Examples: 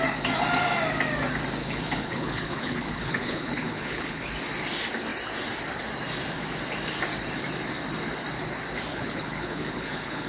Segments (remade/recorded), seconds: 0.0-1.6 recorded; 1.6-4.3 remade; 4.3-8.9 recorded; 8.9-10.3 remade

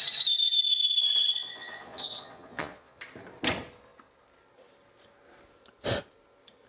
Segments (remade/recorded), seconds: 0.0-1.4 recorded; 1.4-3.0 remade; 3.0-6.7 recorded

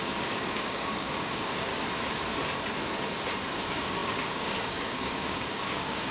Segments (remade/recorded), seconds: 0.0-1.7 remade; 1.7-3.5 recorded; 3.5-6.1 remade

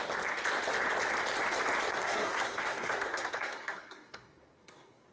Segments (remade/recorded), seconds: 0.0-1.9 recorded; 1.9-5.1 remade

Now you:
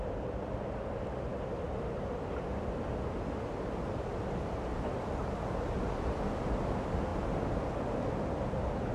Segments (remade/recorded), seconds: 0.0-8.9 recorded